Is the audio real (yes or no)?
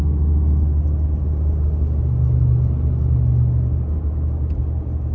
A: yes